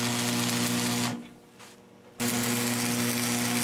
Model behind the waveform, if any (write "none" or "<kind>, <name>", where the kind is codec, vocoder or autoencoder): none